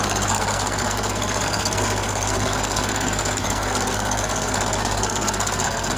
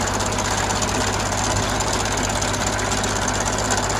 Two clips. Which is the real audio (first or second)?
second